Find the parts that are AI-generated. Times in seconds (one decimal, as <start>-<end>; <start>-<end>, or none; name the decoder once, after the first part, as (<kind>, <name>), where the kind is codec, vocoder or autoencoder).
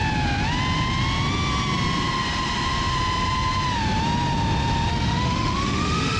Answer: 4.9-6.2 (autoencoder, DAC-VAE)